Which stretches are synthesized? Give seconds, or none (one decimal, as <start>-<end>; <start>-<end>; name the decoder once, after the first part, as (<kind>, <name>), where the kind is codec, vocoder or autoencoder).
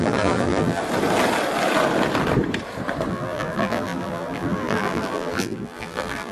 0.0-0.8 (vocoder, BigVGAN v2); 3.1-6.3